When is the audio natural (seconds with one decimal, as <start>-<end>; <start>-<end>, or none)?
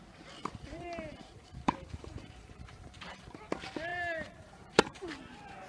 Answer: 0.0-0.4; 3.4-3.9; 5.2-5.7